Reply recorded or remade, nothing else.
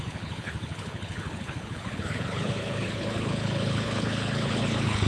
remade